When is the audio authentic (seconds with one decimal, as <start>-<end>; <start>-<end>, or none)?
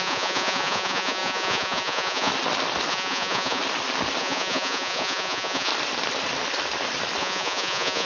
2.3-2.9; 3.6-4.2; 5.7-7.2